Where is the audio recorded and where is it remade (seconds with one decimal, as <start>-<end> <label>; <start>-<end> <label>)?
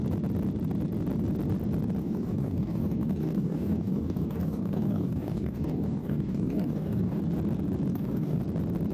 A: 0.0-2.0 recorded; 2.0-7.2 remade; 7.2-7.9 recorded; 7.9-8.4 remade; 8.4-8.9 recorded